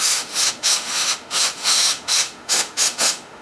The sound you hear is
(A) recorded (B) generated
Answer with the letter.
B